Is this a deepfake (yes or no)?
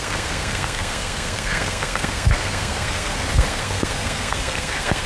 yes